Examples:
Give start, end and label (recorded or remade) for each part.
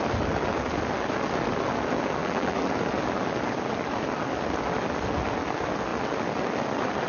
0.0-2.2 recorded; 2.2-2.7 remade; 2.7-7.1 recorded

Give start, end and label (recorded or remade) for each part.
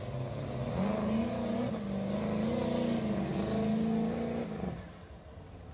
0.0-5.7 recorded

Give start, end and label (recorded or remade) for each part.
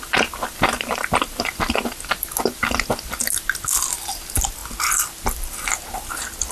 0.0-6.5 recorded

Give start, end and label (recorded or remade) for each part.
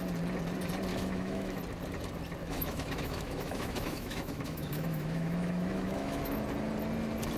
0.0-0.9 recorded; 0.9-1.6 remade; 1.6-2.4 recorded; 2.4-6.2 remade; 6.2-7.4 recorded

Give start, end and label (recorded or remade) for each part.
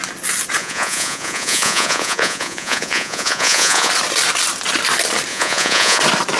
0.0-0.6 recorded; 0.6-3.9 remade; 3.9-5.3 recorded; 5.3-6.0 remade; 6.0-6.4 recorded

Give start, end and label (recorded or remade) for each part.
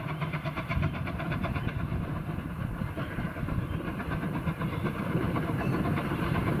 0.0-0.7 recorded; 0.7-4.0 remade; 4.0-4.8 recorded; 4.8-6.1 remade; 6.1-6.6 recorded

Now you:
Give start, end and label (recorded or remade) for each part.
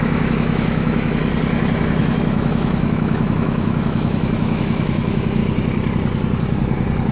0.0-1.2 remade; 1.2-2.0 recorded; 2.0-5.4 remade; 5.4-7.1 recorded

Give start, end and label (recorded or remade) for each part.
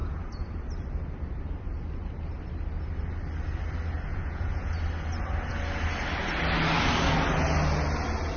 0.0-0.5 remade; 0.5-4.1 recorded; 4.1-4.7 remade; 4.7-8.4 recorded